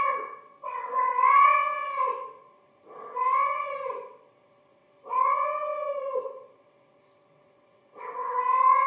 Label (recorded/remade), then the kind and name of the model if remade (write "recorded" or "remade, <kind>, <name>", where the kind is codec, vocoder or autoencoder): remade, vocoder, WaveNeXt